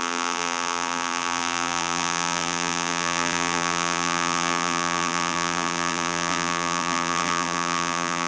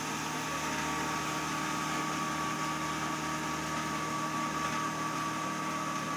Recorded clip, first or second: second